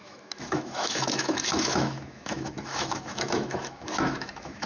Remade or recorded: remade